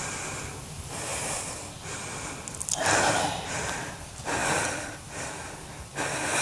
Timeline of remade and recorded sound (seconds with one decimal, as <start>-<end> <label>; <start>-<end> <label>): 0.0-6.4 recorded